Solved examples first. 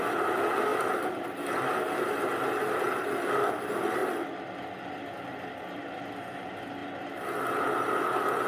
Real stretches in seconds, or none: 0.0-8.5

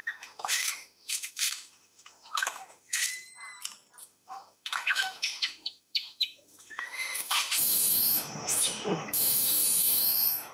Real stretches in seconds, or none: 3.1-4.0